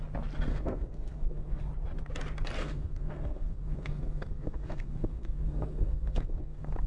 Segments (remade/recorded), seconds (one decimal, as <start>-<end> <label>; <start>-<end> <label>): 0.0-0.5 recorded; 0.5-1.6 remade; 1.6-2.6 recorded; 2.6-6.9 remade